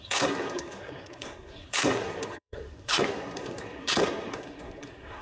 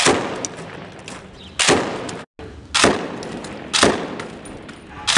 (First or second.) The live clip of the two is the second